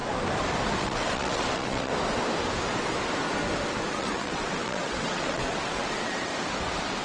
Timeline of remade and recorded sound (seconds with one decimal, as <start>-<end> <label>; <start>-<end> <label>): 0.0-0.8 recorded; 0.8-1.9 remade; 1.9-3.9 recorded; 3.9-6.3 remade; 6.3-7.0 recorded